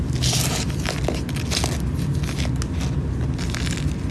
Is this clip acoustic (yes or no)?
yes